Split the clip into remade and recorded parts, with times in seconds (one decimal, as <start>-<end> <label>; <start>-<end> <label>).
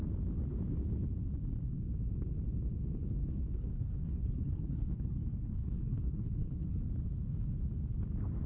0.0-3.2 recorded; 3.2-6.8 remade; 6.8-8.5 recorded